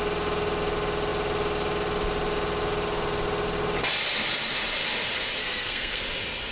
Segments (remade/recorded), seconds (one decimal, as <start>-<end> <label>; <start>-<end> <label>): 0.0-5.4 recorded; 5.4-6.0 remade; 6.0-6.5 recorded